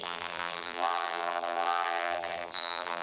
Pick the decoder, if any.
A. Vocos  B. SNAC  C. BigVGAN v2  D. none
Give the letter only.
C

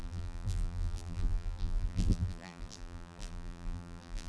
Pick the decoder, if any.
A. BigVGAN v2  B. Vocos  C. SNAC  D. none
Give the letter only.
A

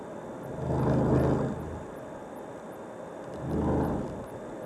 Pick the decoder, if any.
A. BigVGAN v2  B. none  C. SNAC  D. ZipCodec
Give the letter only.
B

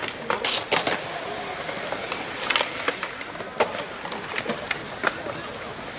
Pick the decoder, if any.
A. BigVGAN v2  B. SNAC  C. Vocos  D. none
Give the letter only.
D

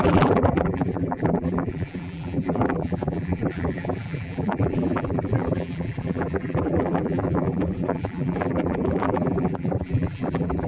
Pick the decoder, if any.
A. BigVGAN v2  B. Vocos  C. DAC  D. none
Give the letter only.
A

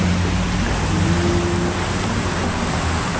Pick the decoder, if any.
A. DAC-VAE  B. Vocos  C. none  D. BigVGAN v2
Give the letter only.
C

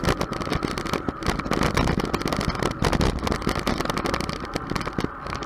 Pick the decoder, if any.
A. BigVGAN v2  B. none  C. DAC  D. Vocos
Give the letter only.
B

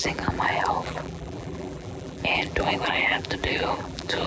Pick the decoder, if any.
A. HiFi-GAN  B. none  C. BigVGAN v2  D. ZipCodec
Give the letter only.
C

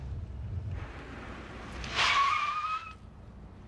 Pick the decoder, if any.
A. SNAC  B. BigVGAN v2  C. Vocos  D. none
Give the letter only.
D